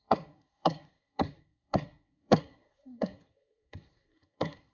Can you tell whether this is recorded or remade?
remade